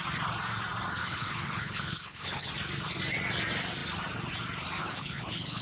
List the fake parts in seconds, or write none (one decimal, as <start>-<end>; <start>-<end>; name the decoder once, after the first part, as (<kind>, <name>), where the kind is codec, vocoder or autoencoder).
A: 1.0-2.5 (codec, HILCodec); 4.8-5.6